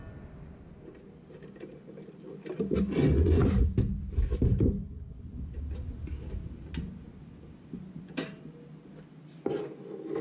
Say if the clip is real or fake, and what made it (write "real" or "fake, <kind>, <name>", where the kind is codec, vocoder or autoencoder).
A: real